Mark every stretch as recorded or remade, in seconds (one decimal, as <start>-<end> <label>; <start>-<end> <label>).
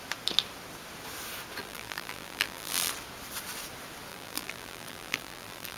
0.0-1.6 recorded; 1.6-2.9 remade; 2.9-4.1 recorded; 4.1-5.8 remade